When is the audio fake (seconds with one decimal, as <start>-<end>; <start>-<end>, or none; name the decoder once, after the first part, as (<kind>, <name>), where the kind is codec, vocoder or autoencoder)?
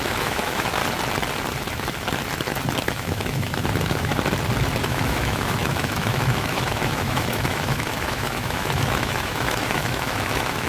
0.0-0.8 (autoencoder, DAC-VAE); 2.9-4.1; 4.8-10.7